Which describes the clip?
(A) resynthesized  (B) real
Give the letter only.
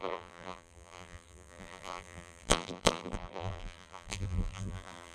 A